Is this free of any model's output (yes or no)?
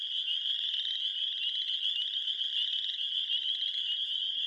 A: yes